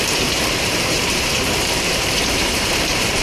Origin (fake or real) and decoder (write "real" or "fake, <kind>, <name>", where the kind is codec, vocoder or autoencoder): fake, vocoder, BigVGAN v2